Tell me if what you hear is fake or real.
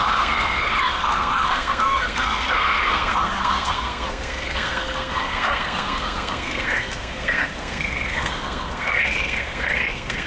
fake